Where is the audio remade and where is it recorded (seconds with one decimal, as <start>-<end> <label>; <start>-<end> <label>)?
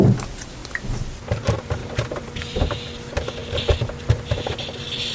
0.0-1.8 recorded; 1.8-2.4 remade; 2.4-5.1 recorded